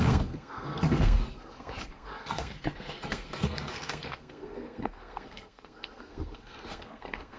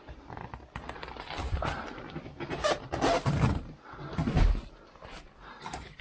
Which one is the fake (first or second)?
first